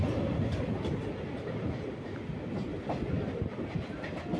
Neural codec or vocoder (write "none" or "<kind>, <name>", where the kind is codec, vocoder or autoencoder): none